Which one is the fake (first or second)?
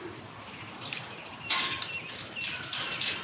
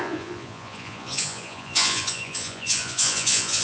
second